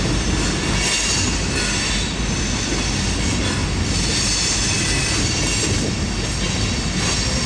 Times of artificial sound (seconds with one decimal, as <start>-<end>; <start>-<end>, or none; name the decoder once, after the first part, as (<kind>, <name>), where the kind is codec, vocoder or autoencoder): none